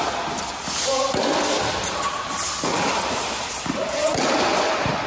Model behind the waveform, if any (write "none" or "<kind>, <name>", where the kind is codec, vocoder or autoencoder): none